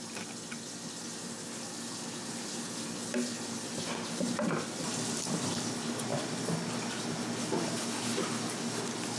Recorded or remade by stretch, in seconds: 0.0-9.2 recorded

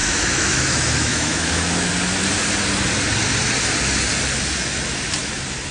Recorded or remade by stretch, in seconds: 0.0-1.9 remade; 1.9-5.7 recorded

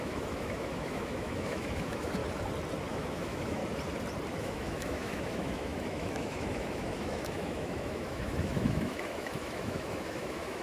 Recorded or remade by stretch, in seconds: 0.0-2.2 remade; 2.2-2.9 recorded; 2.9-3.6 remade; 3.6-4.4 recorded; 4.4-10.6 remade

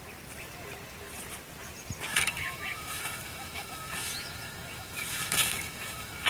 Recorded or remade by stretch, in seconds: 0.0-2.1 recorded; 2.1-6.3 remade

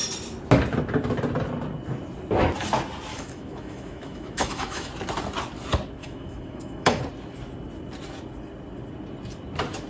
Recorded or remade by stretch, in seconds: 0.0-3.1 recorded; 3.1-4.9 remade; 4.9-6.0 recorded; 6.0-7.0 remade; 7.0-9.9 recorded